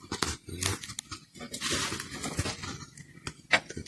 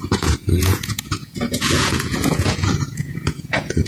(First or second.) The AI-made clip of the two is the second